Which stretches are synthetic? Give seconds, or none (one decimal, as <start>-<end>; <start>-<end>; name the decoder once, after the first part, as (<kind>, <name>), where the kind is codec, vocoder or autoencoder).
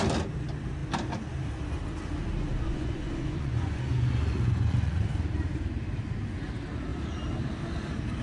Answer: 2.5-5.0 (vocoder, Vocos)